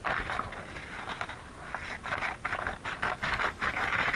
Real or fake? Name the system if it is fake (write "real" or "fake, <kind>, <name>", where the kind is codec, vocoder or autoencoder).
real